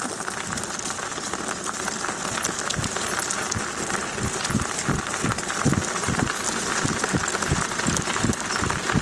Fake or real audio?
real